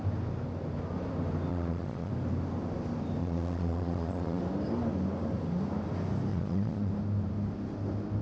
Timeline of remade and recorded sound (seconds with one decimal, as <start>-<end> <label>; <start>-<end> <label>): 0.0-1.5 recorded; 1.5-2.1 remade; 2.1-3.2 recorded; 3.2-4.4 remade; 4.4-6.3 recorded; 6.3-6.9 remade; 6.9-8.2 recorded